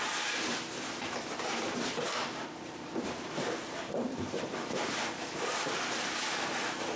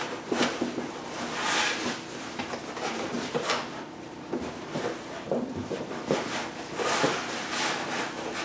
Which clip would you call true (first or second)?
second